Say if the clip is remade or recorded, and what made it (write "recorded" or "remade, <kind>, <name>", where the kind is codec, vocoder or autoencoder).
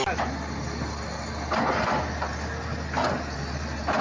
recorded